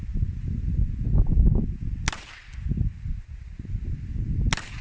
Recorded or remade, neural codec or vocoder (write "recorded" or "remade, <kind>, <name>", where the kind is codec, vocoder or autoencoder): recorded